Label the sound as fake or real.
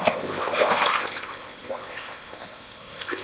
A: fake